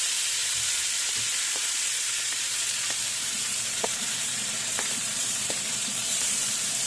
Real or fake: fake